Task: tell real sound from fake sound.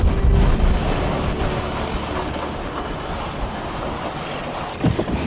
real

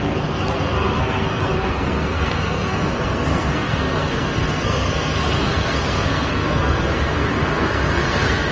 fake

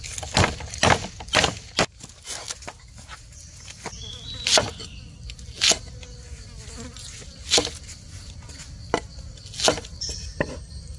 real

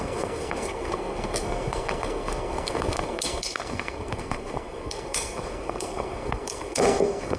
fake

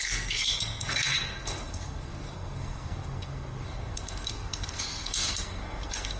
fake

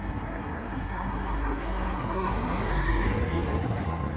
fake